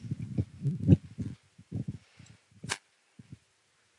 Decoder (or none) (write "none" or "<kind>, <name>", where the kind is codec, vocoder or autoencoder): none